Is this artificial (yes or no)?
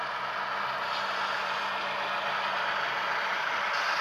no